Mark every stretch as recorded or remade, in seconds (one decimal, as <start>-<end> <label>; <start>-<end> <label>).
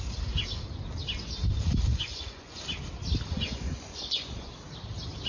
0.0-1.9 recorded; 1.9-2.6 remade; 2.6-3.3 recorded; 3.3-4.5 remade; 4.5-5.3 recorded